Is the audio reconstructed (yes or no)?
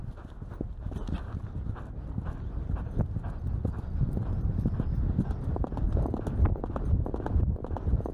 no